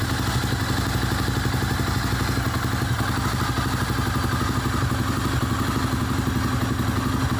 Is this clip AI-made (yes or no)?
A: no